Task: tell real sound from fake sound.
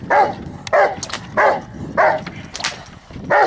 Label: real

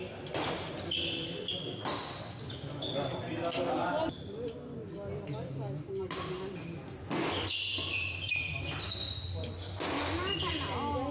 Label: real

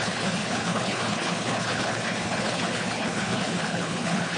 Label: fake